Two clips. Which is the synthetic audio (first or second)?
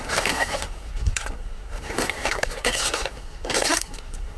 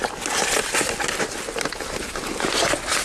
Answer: first